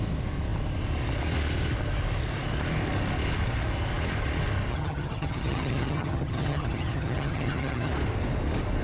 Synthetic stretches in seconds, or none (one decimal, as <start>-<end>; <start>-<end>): 4.7-7.9

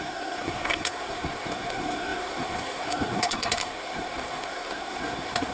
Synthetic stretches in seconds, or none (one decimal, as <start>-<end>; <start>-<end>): 0.0-5.5

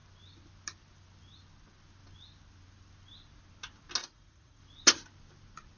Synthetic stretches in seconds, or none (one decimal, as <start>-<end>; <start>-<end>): 4.0-4.6

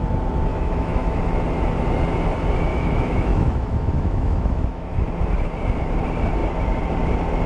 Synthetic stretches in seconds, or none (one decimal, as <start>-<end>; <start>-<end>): 0.5-1.2; 2.7-4.9